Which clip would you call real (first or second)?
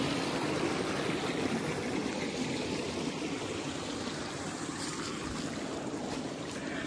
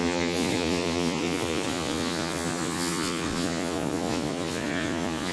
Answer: first